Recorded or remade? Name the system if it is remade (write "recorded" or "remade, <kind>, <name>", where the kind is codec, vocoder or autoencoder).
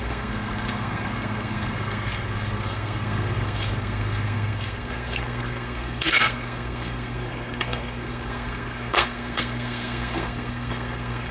remade, codec, SNAC